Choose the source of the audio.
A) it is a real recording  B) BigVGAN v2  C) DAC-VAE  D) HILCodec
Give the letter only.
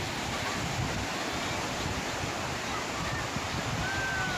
A